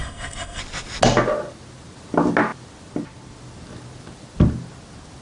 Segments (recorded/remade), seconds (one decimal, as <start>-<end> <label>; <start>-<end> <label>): 0.0-0.6 remade; 0.6-5.2 recorded

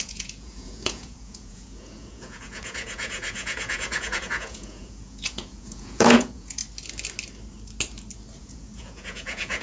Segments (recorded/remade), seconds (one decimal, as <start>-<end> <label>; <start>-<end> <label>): 0.0-6.6 remade; 6.6-8.4 recorded; 8.4-9.6 remade

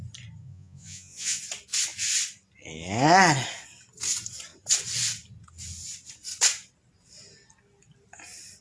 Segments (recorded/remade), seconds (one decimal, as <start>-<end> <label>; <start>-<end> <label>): 0.0-0.4 recorded; 0.4-1.4 remade; 1.4-8.6 recorded

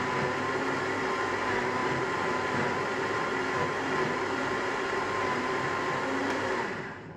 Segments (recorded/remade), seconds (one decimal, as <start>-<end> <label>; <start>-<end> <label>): 0.0-1.8 recorded; 1.8-2.3 remade; 2.3-6.2 recorded; 6.2-7.2 remade

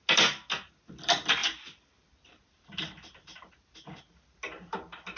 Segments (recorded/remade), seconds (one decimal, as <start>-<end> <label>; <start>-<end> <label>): 0.0-1.4 recorded; 1.4-4.0 remade; 4.0-5.2 recorded

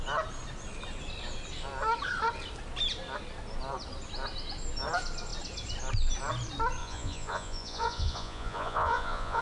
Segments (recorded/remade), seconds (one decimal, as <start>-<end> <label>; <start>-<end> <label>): 0.0-6.8 recorded; 6.8-9.4 remade

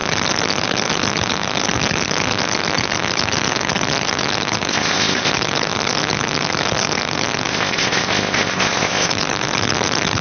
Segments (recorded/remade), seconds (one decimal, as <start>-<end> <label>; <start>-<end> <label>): 0.0-4.7 recorded; 4.7-5.3 remade; 5.3-7.5 recorded; 7.5-9.1 remade; 9.1-10.2 recorded